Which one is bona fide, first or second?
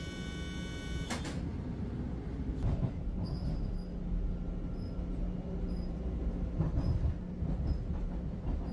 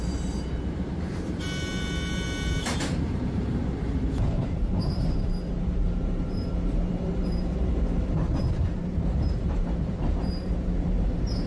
first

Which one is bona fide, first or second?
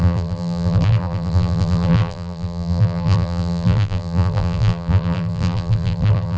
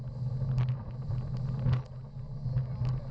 second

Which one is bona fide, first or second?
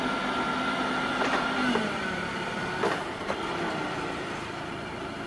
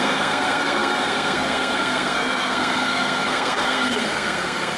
first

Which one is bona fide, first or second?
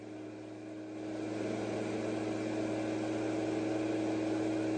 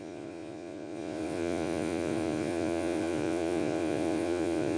first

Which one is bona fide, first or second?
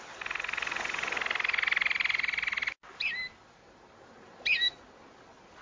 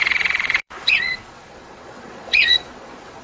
first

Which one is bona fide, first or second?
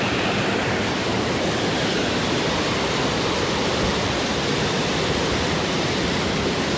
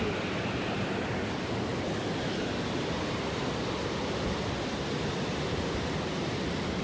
second